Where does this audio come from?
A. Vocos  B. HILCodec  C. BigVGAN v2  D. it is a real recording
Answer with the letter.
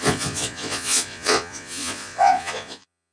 A